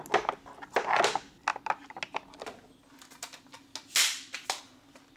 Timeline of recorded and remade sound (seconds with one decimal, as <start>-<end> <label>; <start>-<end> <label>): 0.0-5.2 recorded